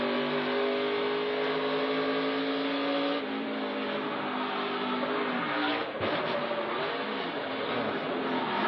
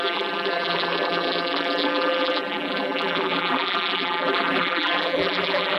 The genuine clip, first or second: first